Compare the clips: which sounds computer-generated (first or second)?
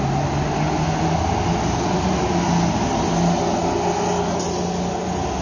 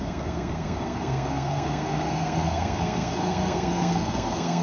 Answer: second